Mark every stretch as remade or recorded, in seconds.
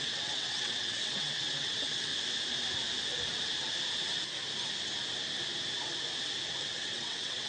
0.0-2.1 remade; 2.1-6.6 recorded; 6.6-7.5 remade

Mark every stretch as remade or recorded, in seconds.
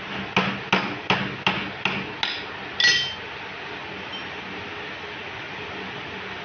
0.0-6.4 recorded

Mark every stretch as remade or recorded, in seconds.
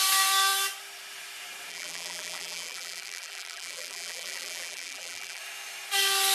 0.0-1.7 recorded; 1.7-5.4 remade; 5.4-6.3 recorded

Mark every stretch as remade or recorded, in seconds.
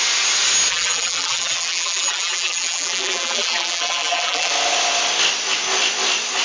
0.0-0.7 recorded; 0.7-4.5 remade; 4.5-6.4 recorded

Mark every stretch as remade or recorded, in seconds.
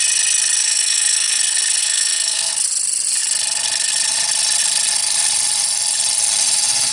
0.0-0.6 recorded; 0.6-1.4 remade; 1.4-1.8 recorded; 1.8-2.5 remade; 2.5-6.9 recorded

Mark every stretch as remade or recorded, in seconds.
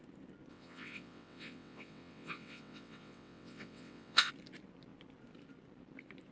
0.0-0.5 recorded; 0.5-4.3 remade; 4.3-6.3 recorded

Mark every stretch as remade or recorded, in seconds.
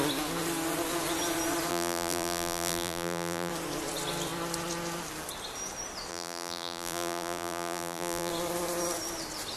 0.0-1.7 recorded; 1.7-3.5 remade; 3.5-6.1 recorded; 6.1-8.3 remade; 8.3-9.6 recorded